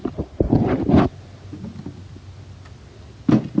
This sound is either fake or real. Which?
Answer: real